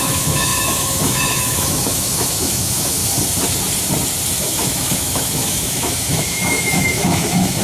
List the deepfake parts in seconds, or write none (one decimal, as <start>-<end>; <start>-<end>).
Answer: 0.0-3.0; 4.4-7.6